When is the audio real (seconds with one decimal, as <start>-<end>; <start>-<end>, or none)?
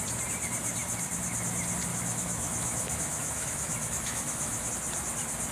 0.0-1.9; 4.7-5.5